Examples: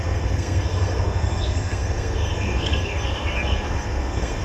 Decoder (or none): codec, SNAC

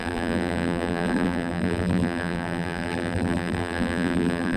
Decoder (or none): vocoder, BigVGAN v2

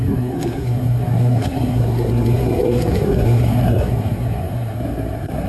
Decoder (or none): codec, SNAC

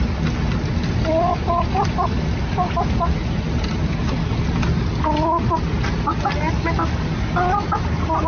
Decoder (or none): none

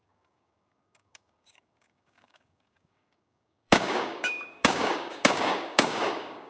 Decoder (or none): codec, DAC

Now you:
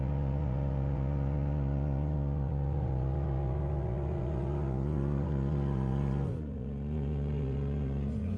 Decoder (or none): vocoder, Vocos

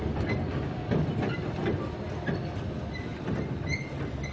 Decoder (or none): none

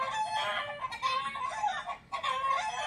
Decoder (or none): none